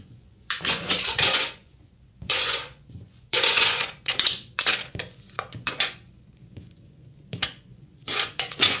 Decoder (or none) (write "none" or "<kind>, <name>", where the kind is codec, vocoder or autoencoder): vocoder, Vocos